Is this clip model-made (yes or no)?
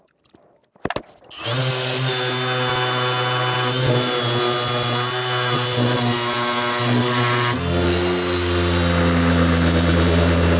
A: no